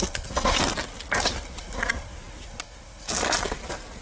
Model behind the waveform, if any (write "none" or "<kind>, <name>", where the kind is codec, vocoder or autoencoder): none